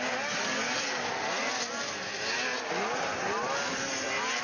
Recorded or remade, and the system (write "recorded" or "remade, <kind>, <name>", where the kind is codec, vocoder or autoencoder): recorded